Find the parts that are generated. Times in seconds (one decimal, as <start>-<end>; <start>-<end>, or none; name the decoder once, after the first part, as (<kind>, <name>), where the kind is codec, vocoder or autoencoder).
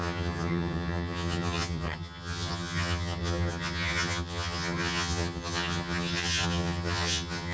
0.0-7.5 (vocoder, HiFi-GAN)